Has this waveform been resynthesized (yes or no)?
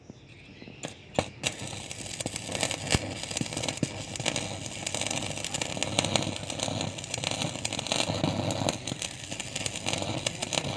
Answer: no